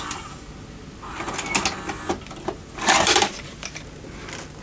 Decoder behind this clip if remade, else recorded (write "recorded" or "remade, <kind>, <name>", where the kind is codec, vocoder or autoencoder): recorded